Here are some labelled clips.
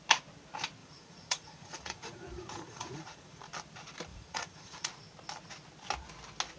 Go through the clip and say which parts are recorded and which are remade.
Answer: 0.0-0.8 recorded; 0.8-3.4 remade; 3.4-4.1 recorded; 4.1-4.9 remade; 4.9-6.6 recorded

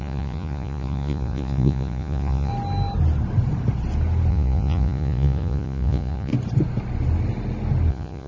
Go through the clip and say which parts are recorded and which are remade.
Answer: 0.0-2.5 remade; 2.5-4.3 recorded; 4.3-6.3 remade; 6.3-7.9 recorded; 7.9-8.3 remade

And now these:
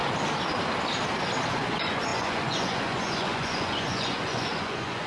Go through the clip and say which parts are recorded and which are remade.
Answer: 0.0-1.5 recorded; 1.5-5.1 remade

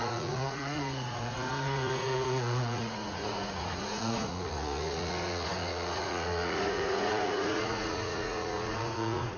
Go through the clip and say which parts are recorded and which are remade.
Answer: 0.0-9.4 remade

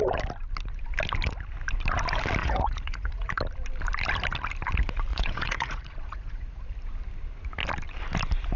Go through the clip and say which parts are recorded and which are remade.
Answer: 0.0-2.4 recorded; 2.4-3.4 remade; 3.4-5.1 recorded; 5.1-6.6 remade; 6.6-8.6 recorded

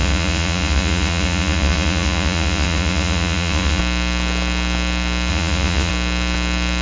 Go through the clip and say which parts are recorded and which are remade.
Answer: 0.0-3.8 remade; 3.8-5.3 recorded; 5.3-5.9 remade; 5.9-6.8 recorded

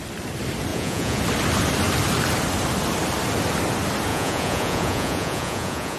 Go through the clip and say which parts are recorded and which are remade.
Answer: 0.0-0.7 recorded; 0.7-1.2 remade; 1.2-4.1 recorded; 4.1-6.0 remade